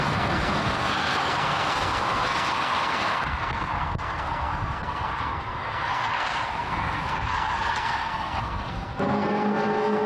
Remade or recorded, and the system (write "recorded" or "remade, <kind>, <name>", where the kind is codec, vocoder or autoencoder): remade, codec, SNAC